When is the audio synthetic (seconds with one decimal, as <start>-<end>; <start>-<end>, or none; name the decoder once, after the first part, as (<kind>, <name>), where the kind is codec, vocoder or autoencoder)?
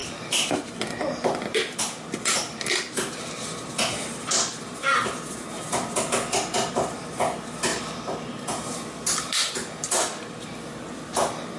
0.0-0.7 (vocoder, BigVGAN v2)